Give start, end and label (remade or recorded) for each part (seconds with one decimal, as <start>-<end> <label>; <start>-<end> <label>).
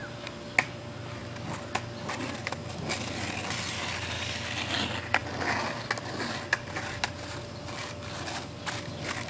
0.0-9.3 recorded